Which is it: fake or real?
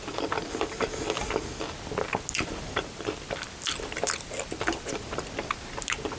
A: real